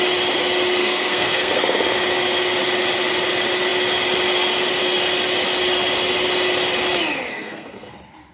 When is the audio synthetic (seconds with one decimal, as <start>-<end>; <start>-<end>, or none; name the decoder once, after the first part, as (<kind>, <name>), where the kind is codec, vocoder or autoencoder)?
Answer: 0.8-1.6 (codec, SNAC); 7.3-7.9